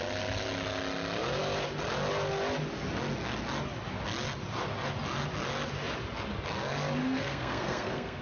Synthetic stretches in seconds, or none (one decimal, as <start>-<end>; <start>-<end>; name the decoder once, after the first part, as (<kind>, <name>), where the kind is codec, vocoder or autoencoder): 7.0-8.2 (codec, SNAC)